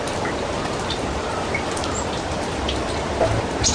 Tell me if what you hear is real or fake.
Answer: real